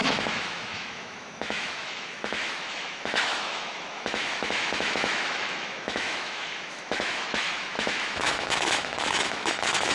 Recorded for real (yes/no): no